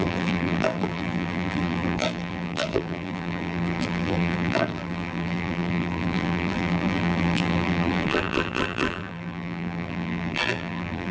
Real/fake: fake